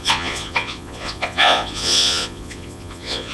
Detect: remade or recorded remade